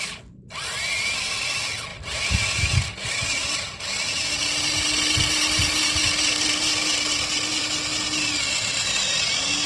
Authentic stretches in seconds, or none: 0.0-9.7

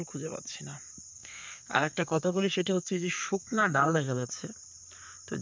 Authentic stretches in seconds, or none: 0.0-1.1; 4.3-5.4

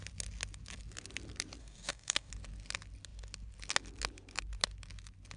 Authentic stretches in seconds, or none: 0.0-1.6; 2.3-5.4

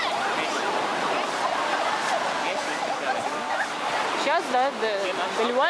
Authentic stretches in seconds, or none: 0.0-5.7

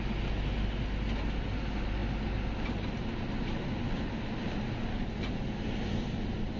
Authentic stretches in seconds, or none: 0.0-6.6